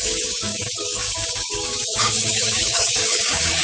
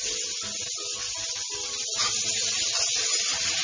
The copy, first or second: first